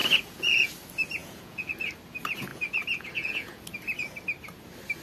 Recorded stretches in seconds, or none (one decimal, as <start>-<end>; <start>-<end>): 0.7-1.2; 1.7-2.5; 3.6-5.0

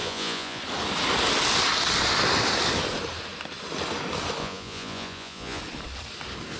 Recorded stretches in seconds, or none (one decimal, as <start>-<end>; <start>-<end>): 0.6-4.4; 5.6-6.6

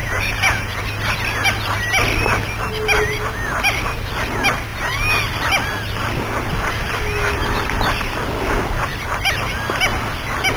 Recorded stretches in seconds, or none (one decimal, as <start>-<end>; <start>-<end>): 0.8-10.6

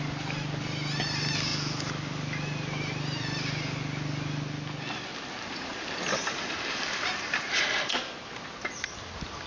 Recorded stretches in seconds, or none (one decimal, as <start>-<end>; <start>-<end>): 0.0-9.5

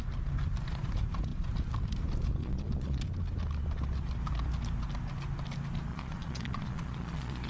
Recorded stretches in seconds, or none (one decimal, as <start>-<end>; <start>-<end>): 0.0-2.4; 3.0-5.9

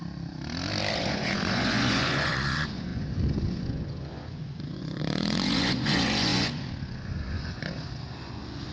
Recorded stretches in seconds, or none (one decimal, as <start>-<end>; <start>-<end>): 0.0-0.9

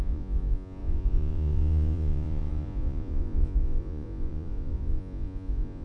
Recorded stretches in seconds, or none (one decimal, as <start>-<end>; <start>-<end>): none